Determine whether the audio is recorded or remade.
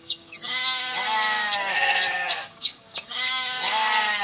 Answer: remade